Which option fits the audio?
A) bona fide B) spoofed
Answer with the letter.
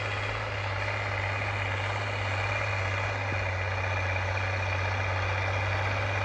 A